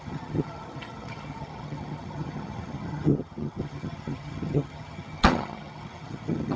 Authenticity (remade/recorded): remade